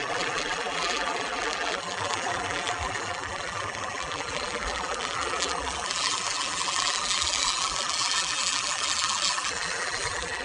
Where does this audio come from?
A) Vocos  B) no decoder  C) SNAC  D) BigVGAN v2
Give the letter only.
D